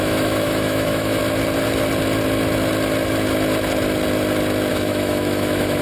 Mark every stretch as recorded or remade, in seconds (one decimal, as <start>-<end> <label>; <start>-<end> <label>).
0.0-1.2 remade; 1.2-4.7 recorded; 4.7-5.8 remade